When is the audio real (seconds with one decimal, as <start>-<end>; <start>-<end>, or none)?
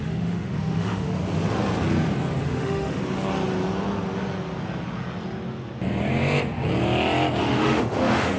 1.2-2.4; 3.0-7.4